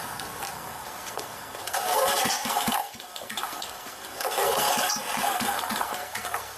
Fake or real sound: fake